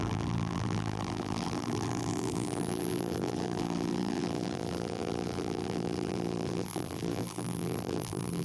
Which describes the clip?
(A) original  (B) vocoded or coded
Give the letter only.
B